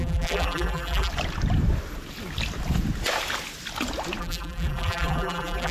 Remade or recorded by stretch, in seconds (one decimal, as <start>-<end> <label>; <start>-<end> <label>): 0.0-1.1 remade; 1.1-4.2 recorded; 4.2-5.7 remade